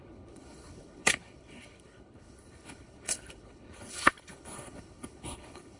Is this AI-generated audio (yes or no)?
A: yes